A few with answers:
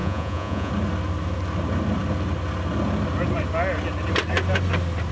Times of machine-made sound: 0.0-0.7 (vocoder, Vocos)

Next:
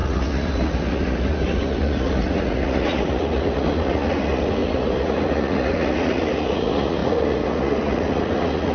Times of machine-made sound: 0.0-8.7 (vocoder, Vocos)

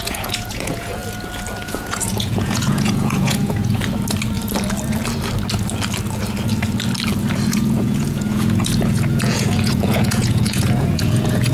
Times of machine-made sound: 0.0-1.0 (vocoder, Vocos); 1.6-3.8; 7.5-11.5

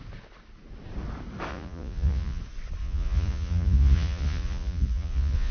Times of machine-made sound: 1.5-2.4 (vocoder, Vocos); 2.8-5.5

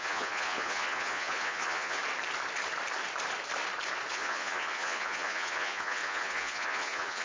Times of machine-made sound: 0.0-2.0 (vocoder, Vocos); 4.1-7.2

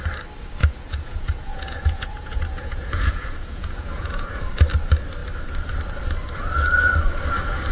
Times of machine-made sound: 0.6-4.4 (vocoder, Vocos)

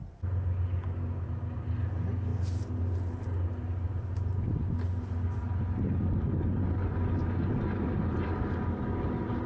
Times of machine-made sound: none